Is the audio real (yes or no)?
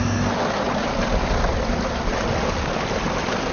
yes